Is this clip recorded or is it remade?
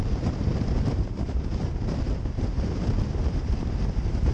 remade